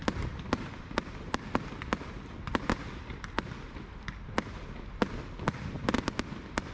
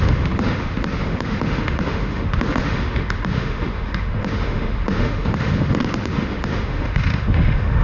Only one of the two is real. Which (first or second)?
first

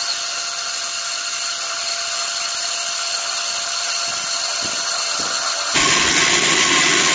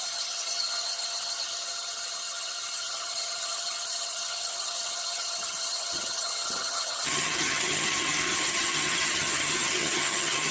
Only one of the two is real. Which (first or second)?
first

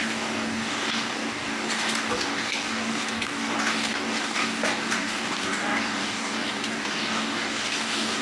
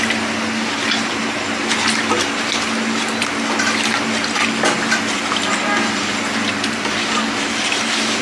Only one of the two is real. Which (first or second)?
second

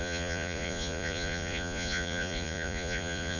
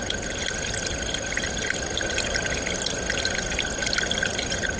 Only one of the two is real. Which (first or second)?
second